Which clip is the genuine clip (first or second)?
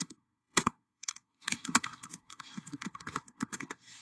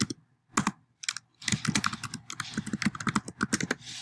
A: second